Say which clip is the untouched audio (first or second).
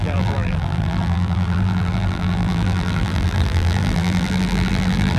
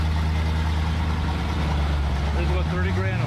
second